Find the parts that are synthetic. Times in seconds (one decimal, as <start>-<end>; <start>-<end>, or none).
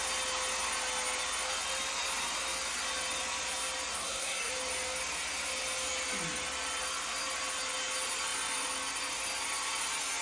3.9-4.5